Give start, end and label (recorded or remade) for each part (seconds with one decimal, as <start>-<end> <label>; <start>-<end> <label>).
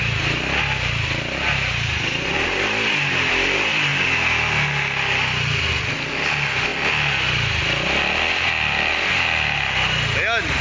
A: 0.0-10.6 recorded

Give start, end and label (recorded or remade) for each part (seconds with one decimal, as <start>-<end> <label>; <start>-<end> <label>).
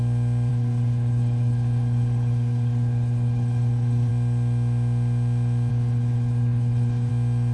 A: 0.0-0.5 recorded; 0.5-4.1 remade; 4.1-5.7 recorded; 5.7-7.1 remade; 7.1-7.5 recorded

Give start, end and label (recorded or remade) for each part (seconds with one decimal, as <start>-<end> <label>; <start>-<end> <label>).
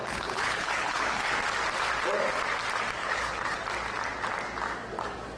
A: 0.0-1.3 remade; 1.3-3.0 recorded; 3.0-3.6 remade; 3.6-5.4 recorded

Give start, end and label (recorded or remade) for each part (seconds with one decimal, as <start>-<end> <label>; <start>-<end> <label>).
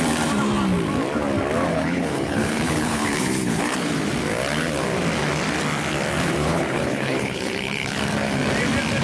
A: 0.0-1.7 recorded; 1.7-3.9 remade; 3.9-6.4 recorded; 6.4-8.0 remade; 8.0-9.0 recorded